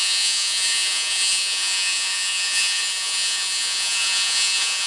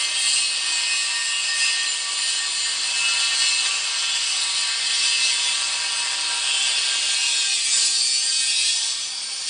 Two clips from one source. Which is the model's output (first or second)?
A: first